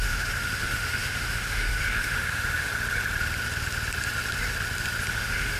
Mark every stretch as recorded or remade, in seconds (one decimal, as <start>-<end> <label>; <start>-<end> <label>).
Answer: 0.0-2.7 remade; 2.7-5.1 recorded; 5.1-5.6 remade